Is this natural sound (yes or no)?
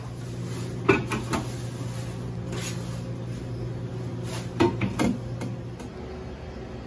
yes